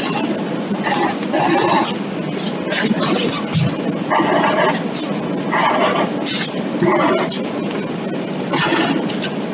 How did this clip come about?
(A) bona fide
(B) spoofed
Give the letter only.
A